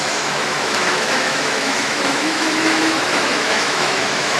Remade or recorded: remade